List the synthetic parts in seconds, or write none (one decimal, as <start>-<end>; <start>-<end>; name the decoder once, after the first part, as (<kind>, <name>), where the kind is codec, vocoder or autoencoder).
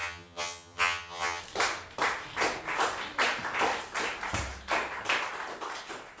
0.0-1.4 (vocoder, HiFi-GAN)